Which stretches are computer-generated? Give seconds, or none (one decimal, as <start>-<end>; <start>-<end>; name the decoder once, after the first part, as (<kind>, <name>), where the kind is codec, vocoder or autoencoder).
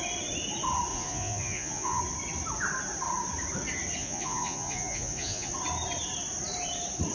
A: 0.9-2.0 (vocoder, Vocos); 4.0-5.5